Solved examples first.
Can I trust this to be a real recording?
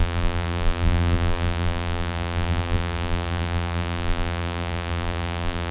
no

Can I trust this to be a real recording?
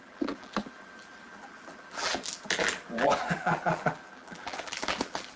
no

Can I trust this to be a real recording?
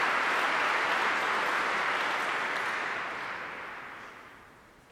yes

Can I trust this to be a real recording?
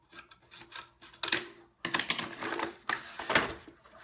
yes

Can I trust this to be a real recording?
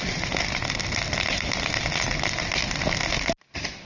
yes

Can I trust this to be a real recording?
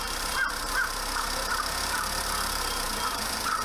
no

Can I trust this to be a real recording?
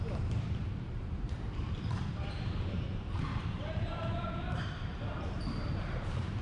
no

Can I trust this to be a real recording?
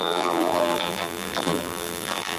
no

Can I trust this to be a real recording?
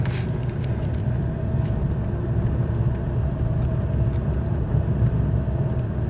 yes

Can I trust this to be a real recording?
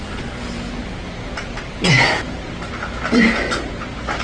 yes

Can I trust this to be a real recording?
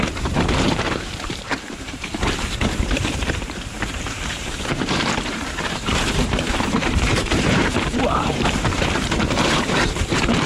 no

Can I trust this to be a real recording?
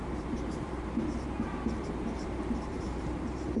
no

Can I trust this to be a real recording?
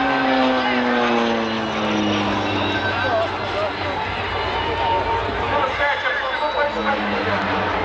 yes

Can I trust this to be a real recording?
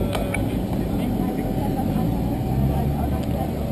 yes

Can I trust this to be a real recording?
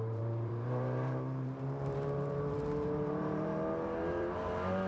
no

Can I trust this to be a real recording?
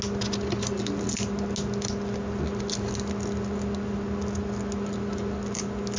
yes